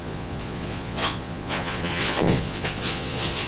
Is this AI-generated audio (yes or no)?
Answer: yes